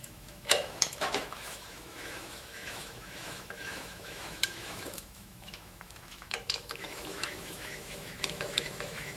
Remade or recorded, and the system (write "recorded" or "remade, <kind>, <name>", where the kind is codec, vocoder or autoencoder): remade, autoencoder, DAC-VAE